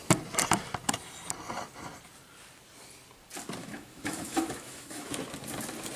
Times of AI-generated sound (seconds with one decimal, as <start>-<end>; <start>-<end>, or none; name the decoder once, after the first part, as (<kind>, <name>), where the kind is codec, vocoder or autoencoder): 3.6-5.1 (autoencoder, DAC-VAE)